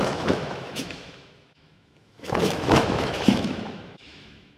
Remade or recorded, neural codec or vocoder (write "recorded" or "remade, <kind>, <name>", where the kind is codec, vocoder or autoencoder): remade, autoencoder, DAC-VAE